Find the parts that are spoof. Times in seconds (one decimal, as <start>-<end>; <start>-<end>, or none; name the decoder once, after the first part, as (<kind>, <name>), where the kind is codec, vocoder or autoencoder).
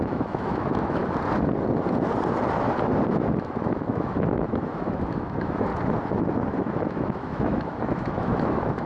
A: 0.0-1.0 (autoencoder, DAC-VAE); 3.1-5.7; 6.6-8.9